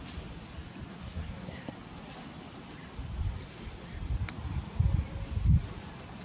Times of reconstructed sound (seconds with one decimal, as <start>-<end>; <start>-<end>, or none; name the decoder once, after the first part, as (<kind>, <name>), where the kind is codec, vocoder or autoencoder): 1.0-1.7 (codec, SNAC)